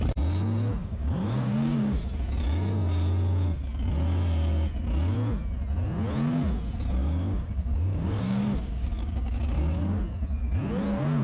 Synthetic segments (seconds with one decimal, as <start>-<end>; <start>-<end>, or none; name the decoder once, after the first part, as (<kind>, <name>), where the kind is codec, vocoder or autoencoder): 0.8-2.0 (codec, DAC); 7.0-10.0